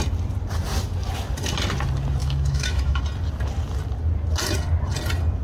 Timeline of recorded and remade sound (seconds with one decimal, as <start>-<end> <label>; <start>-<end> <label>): 0.0-2.2 recorded; 2.2-3.0 remade; 3.0-5.4 recorded